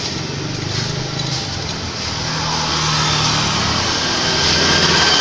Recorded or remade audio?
recorded